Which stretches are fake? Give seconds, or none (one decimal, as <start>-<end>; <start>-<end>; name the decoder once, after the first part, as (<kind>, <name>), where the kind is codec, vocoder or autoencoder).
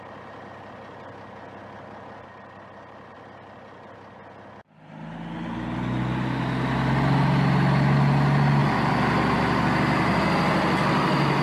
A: none